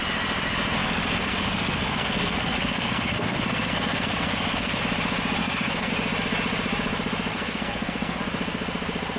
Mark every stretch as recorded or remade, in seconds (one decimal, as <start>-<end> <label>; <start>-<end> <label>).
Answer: 0.0-0.8 recorded; 0.8-4.8 remade; 4.8-5.4 recorded; 5.4-5.9 remade; 5.9-7.3 recorded; 7.3-8.2 remade; 8.2-9.2 recorded